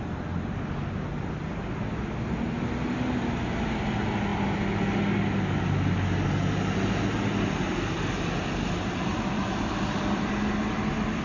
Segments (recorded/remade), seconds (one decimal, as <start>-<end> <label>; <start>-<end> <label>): 0.0-9.1 recorded; 9.1-10.5 remade; 10.5-11.2 recorded